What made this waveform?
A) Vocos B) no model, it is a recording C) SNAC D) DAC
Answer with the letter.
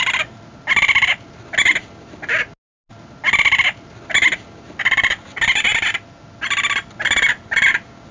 B